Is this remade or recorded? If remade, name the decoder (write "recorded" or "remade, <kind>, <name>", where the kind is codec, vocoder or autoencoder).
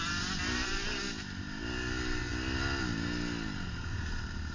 recorded